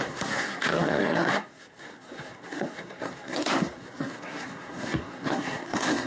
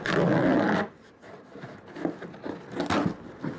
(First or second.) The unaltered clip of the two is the second